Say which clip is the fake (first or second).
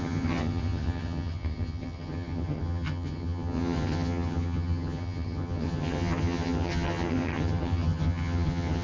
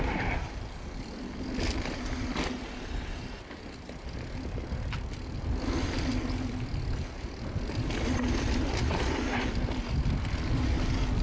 first